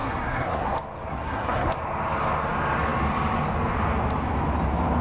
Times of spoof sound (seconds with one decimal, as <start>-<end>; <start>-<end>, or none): 0.0-0.7; 1.1-1.7